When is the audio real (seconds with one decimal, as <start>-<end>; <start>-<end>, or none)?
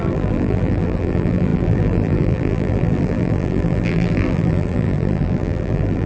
none